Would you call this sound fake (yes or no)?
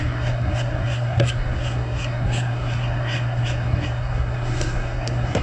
yes